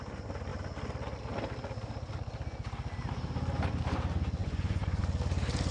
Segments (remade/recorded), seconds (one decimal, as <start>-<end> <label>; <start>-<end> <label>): 0.0-4.4 recorded; 4.4-5.0 remade; 5.0-5.7 recorded